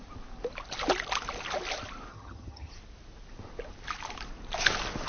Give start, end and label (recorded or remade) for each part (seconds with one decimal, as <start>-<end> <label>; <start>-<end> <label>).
0.0-2.1 recorded; 2.1-2.7 remade; 2.7-5.1 recorded